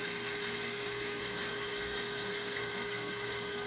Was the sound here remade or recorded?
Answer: remade